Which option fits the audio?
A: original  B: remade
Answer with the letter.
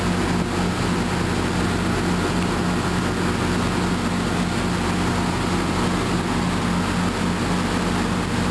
A